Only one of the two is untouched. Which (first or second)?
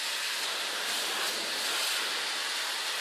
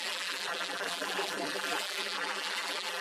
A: first